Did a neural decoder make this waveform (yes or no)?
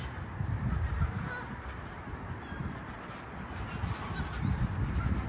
no